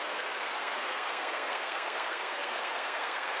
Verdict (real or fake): fake